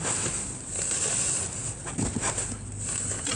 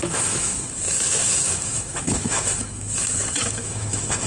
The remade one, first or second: second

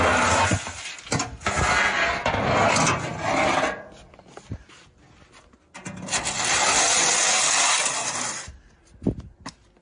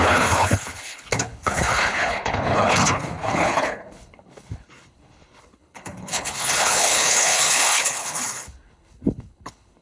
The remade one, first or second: second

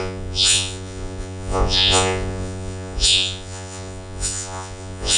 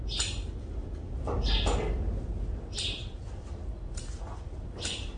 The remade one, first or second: first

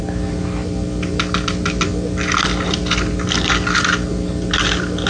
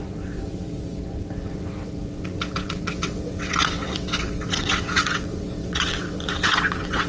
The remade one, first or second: second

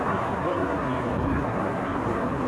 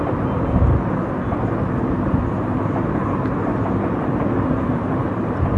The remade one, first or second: first